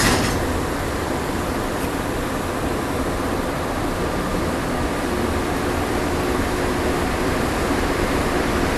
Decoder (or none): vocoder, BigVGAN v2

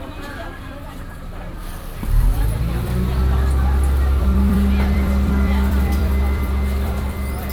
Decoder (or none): vocoder, BigVGAN v2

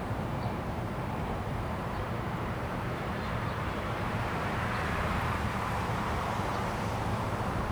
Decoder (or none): vocoder, BigVGAN v2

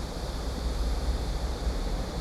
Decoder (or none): vocoder, BigVGAN v2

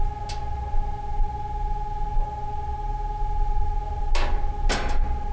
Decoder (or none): none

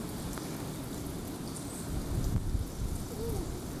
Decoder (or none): none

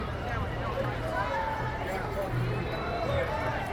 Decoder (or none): vocoder, BigVGAN v2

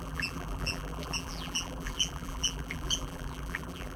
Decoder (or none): vocoder, BigVGAN v2